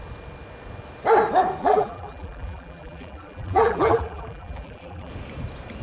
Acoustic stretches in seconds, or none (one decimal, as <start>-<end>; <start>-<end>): 0.0-1.6; 5.1-5.8